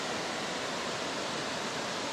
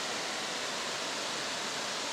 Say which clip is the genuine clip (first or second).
second